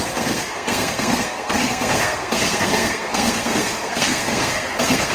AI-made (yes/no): yes